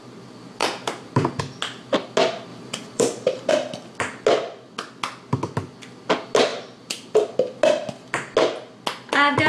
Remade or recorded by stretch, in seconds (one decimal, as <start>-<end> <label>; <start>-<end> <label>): 0.0-0.6 recorded; 0.6-1.4 remade; 1.4-2.5 recorded; 2.5-3.5 remade; 3.5-6.5 recorded; 6.5-7.2 remade; 7.2-9.5 recorded